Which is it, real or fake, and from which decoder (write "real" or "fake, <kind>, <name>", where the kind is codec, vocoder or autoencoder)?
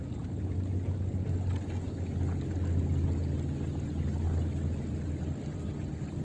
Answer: real